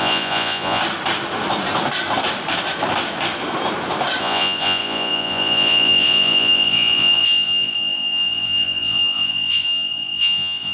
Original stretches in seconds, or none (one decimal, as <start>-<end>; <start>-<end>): 0.8-4.2